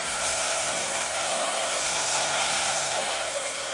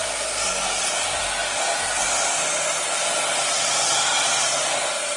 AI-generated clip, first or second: first